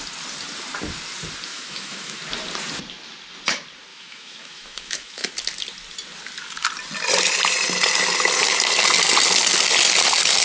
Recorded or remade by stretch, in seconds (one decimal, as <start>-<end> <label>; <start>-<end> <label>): 0.0-1.5 recorded; 1.5-2.2 remade; 2.2-3.9 recorded; 3.9-5.3 remade; 5.3-10.4 recorded